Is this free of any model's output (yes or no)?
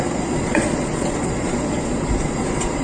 no